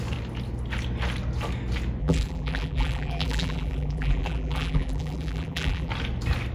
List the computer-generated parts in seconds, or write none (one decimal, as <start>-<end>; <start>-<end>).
2.0-5.9